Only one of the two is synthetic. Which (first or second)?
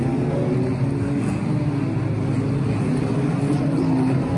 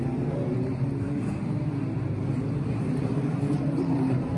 second